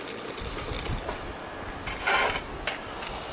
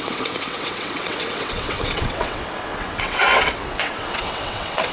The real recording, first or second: first